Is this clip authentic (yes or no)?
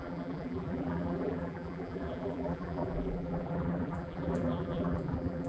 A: no